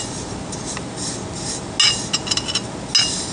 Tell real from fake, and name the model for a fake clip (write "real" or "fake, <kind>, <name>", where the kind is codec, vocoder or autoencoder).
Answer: real